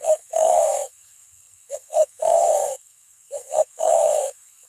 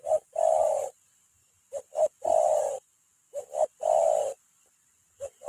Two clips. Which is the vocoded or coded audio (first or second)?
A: first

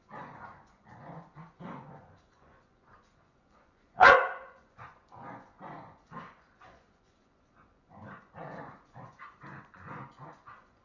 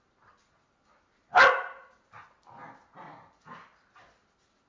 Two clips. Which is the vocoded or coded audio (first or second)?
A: first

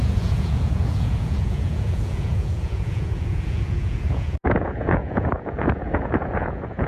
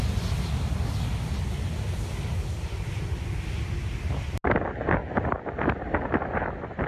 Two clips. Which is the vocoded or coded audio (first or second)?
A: first